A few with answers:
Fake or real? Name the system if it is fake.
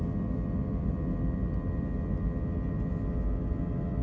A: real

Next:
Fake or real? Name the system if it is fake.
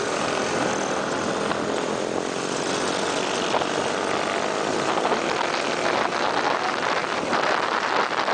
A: real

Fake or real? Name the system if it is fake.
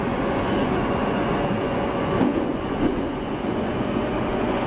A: fake, vocoder, Vocos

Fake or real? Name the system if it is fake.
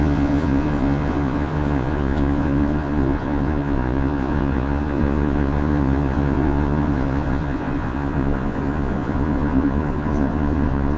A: fake, vocoder, Vocos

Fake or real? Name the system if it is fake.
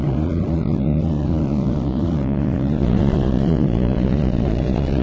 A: fake, vocoder, Vocos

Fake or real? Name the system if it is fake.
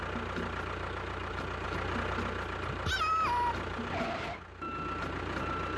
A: real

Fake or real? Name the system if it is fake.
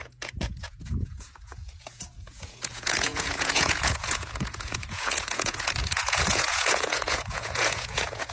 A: fake, vocoder, Vocos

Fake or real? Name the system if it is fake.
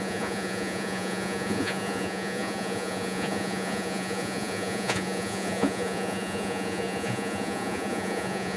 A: fake, vocoder, Vocos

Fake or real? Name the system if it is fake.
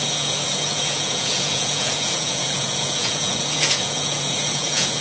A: fake, vocoder, Vocos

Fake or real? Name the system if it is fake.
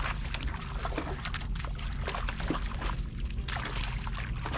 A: real